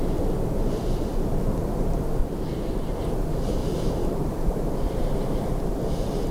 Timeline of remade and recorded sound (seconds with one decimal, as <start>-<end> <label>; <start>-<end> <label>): 0.0-2.2 recorded; 2.2-3.0 remade; 3.0-3.6 recorded; 3.6-5.7 remade; 5.7-6.3 recorded